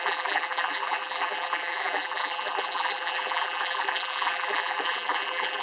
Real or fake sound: fake